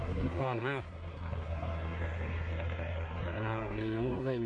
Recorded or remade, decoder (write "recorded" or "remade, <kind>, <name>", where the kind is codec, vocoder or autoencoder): remade, codec, SNAC